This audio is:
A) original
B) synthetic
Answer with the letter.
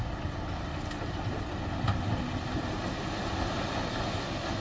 A